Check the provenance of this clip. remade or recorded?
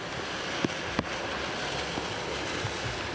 recorded